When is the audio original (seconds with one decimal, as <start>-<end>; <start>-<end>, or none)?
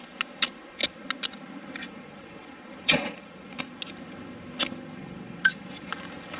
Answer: 0.0-1.8; 3.6-5.0; 5.9-6.4